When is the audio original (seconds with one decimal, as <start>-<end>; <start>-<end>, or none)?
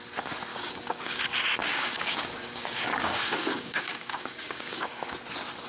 0.0-0.5; 1.2-1.6; 5.0-5.7